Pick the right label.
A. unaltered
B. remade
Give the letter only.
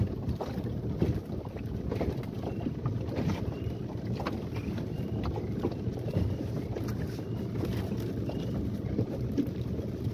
A